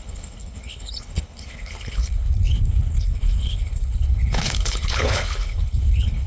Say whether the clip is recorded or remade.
remade